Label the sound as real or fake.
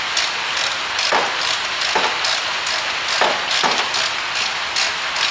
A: real